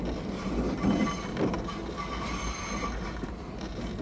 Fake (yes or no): no